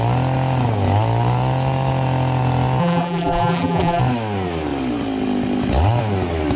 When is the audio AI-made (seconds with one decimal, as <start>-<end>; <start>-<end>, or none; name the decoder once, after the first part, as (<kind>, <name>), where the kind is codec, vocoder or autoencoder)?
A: 2.8-4.0 (vocoder, BigVGAN v2)